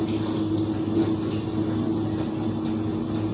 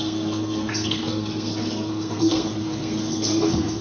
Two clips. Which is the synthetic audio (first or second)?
second